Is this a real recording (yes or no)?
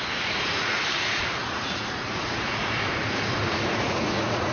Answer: no